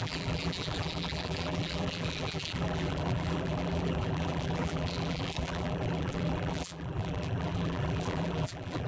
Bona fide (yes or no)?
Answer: no